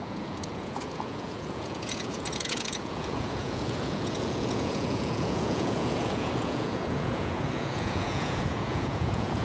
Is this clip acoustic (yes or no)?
no